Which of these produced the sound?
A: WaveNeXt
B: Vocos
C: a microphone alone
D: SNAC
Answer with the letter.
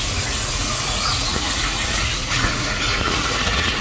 B